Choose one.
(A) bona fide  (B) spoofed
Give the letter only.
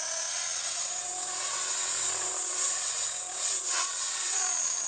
B